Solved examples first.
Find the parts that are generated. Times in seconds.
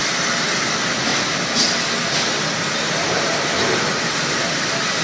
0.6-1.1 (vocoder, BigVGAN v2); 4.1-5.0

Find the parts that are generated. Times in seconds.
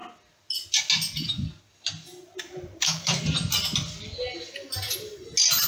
2.0-3.2 (vocoder, BigVGAN v2)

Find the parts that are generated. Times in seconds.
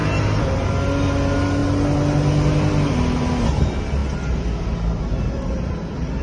none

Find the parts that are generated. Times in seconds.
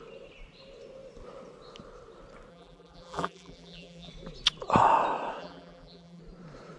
2.5-4.1 (vocoder, BigVGAN v2); 5.4-6.2